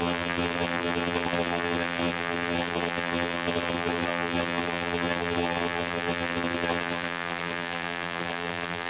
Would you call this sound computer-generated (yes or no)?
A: yes